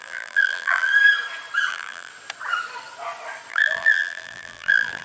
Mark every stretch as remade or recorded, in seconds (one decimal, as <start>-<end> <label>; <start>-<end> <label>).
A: 0.0-0.9 remade; 0.9-1.7 recorded; 1.7-2.1 remade; 2.1-3.5 recorded; 3.5-5.0 remade